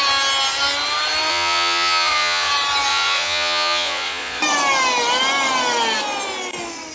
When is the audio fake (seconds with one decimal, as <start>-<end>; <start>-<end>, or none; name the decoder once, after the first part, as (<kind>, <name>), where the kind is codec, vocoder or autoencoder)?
1.3-2.5 (vocoder, Vocos); 2.9-4.4